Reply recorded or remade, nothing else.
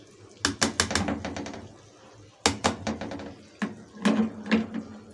recorded